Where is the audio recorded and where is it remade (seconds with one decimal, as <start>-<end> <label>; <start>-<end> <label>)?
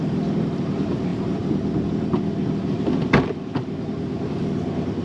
0.0-5.0 remade